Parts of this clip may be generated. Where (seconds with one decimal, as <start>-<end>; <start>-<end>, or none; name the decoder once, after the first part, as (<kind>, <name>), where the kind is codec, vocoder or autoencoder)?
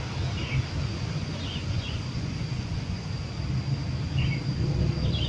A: 0.9-3.3 (vocoder, Vocos)